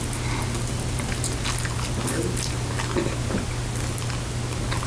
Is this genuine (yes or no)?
yes